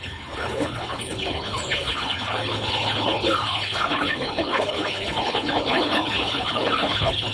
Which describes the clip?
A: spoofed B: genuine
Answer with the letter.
A